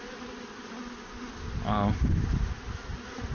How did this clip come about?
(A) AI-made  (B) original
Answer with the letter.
B